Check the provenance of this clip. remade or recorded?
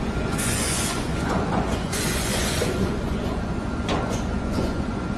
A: remade